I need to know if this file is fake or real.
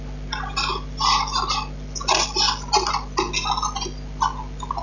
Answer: real